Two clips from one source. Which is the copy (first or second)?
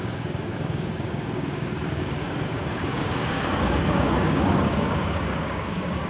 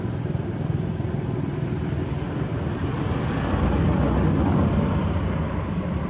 first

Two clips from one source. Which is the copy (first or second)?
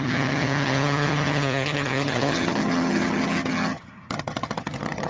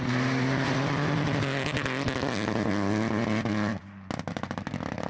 first